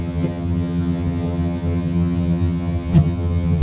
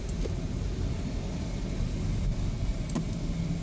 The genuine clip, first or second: second